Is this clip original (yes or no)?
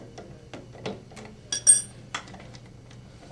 yes